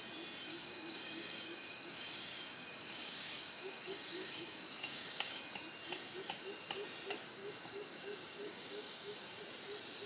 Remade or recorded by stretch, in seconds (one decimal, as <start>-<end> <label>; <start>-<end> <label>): 0.0-0.5 recorded; 0.5-5.4 remade; 5.4-7.4 recorded; 7.4-9.4 remade; 9.4-10.1 recorded